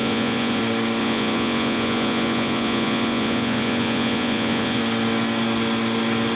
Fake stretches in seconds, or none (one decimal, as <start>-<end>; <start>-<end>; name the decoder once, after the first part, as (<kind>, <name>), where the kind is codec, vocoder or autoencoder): 0.0-0.6 (vocoder, Vocos); 1.0-4.8